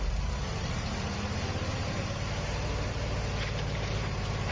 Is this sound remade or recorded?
remade